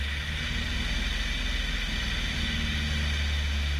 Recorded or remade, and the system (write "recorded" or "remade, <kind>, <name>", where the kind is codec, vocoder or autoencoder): recorded